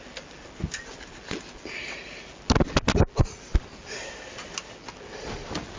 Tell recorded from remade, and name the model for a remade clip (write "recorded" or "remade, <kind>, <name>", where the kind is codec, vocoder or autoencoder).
recorded